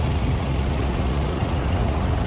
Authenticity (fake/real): fake